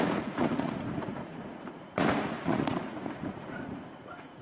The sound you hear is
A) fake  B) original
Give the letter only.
A